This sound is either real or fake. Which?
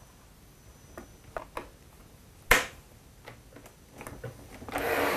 real